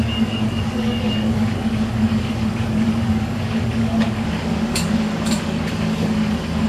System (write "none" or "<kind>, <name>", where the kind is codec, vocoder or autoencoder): codec, DAC